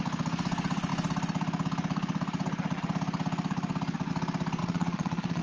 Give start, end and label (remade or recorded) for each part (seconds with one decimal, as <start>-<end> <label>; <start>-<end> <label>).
0.0-4.6 recorded; 4.6-5.4 remade